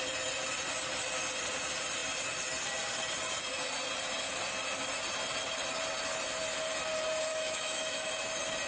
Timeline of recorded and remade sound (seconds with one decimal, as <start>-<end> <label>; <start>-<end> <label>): 0.0-7.3 recorded; 7.3-8.1 remade; 8.1-8.7 recorded